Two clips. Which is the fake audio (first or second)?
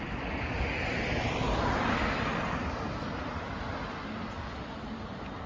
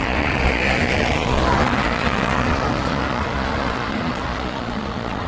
second